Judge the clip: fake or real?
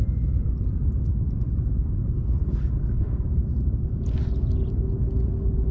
real